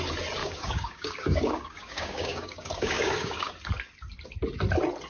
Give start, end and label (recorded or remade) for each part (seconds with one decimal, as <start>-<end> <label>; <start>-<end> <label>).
0.0-0.4 recorded; 0.4-3.5 remade; 3.5-5.1 recorded

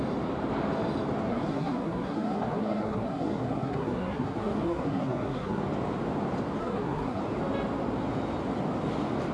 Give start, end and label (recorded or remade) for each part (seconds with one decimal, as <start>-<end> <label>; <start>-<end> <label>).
0.0-1.3 recorded; 1.3-5.6 remade; 5.6-6.6 recorded; 6.6-7.2 remade; 7.2-9.3 recorded

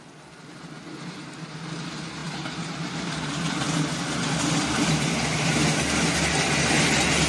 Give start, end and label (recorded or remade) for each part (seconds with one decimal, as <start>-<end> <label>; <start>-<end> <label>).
0.0-7.3 recorded

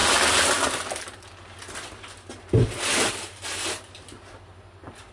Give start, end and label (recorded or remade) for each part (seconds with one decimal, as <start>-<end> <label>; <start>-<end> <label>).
0.0-5.1 recorded

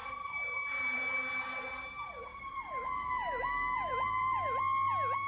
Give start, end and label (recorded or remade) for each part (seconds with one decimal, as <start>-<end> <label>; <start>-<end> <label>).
0.0-1.0 remade; 1.0-2.3 recorded; 2.3-4.6 remade; 4.6-5.3 recorded

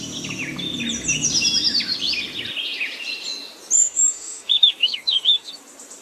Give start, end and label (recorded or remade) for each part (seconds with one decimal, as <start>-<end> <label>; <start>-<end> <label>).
0.0-3.8 recorded; 3.8-5.5 remade; 5.5-6.0 recorded

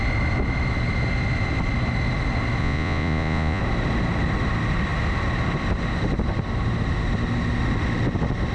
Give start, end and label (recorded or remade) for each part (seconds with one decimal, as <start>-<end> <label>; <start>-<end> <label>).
0.0-2.6 recorded; 2.6-3.6 remade; 3.6-8.5 recorded